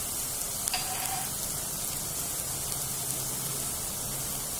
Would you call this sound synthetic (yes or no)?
no